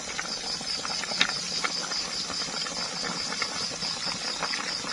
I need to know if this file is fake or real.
real